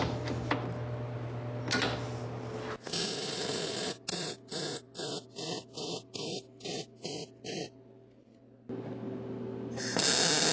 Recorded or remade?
recorded